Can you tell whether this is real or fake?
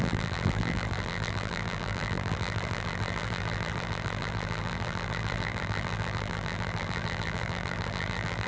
fake